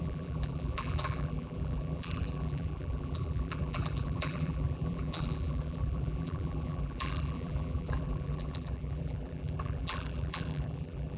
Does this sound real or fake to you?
fake